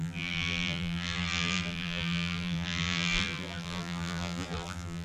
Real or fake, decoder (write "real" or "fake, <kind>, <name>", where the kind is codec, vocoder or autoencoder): fake, vocoder, BigVGAN v2